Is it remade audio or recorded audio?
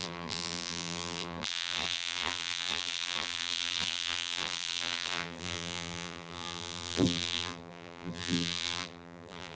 remade